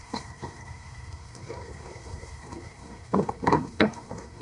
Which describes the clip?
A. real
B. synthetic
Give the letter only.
B